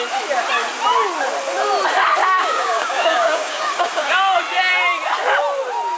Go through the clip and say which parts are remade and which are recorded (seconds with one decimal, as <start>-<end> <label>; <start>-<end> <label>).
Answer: 0.0-2.2 recorded; 2.2-4.1 remade; 4.1-6.0 recorded